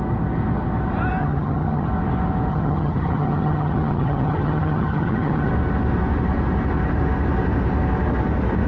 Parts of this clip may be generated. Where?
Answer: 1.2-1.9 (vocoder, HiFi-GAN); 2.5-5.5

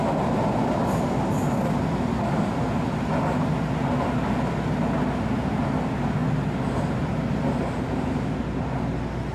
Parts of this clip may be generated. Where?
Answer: none

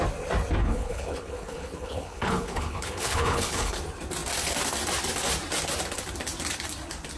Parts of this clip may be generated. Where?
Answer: 0.6-3.8 (codec, HILCodec)

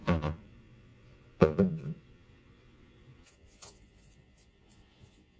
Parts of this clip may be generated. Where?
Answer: 0.0-5.4 (vocoder, Vocos)